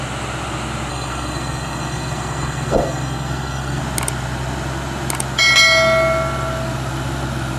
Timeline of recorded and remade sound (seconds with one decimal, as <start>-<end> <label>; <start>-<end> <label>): 0.0-0.9 recorded; 0.9-3.8 remade; 3.8-7.6 recorded